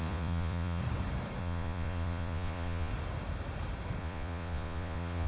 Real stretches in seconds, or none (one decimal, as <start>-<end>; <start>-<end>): 0.8-1.4; 2.9-4.0